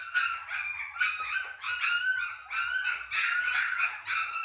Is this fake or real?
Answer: real